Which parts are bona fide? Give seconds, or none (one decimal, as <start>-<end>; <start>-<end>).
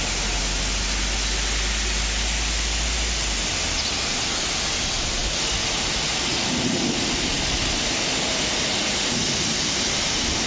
0.0-10.5